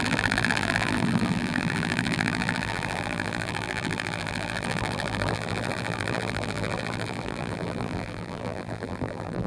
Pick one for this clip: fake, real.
fake